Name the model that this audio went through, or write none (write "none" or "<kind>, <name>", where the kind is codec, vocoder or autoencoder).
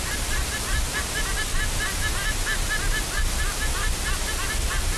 none